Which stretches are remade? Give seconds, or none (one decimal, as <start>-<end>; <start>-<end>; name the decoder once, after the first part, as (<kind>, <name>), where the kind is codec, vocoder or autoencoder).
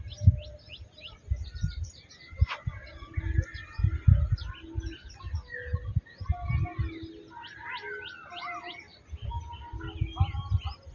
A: none